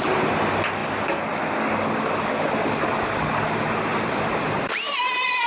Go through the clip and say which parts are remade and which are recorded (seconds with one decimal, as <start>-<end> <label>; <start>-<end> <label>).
0.0-3.9 recorded; 3.9-5.0 remade; 5.0-5.5 recorded